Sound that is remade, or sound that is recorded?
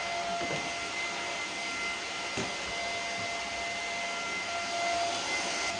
recorded